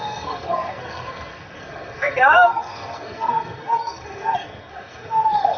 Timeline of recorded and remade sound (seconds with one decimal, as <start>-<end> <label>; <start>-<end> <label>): 0.0-5.6 remade